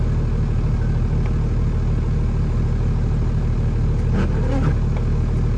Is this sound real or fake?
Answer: real